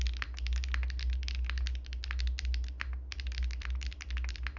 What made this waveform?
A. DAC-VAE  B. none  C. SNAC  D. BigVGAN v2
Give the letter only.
B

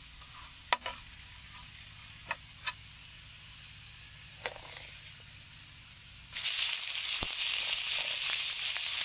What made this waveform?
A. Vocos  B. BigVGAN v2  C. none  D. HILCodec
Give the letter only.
C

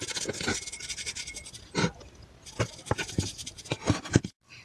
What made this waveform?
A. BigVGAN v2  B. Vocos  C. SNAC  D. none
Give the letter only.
D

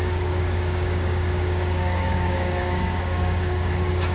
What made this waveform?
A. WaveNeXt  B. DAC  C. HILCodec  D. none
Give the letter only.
B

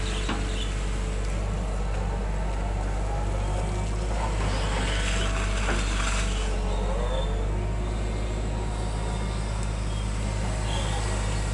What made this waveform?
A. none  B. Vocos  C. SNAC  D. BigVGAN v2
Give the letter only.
A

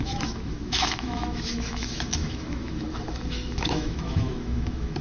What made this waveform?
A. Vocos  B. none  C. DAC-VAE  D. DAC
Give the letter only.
C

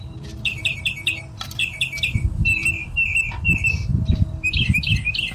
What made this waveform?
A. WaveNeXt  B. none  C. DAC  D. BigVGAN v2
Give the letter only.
D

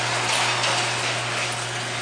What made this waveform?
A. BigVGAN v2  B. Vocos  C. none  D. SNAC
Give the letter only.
C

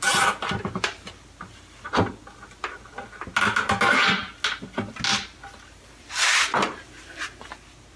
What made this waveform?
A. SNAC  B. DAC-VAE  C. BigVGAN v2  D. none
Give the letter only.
D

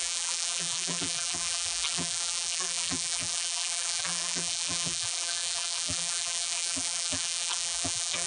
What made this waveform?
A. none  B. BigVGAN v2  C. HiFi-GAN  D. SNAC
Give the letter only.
B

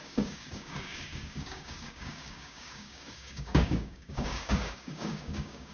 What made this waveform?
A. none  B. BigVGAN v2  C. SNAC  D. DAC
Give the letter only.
D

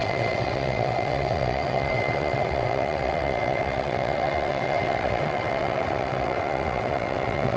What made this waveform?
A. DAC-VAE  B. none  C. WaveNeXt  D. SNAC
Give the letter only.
C